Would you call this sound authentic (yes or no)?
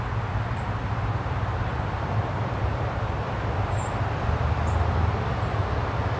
no